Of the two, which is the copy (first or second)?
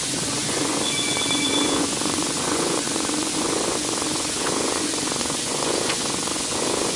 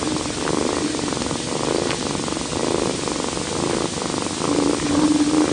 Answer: first